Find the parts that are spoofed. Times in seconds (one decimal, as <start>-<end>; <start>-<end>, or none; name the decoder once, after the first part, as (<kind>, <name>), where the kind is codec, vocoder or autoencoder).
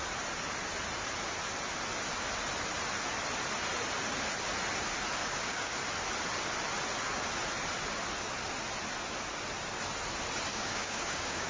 5.2-5.8 (codec, DAC); 10.5-11.5